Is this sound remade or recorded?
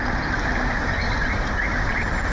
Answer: recorded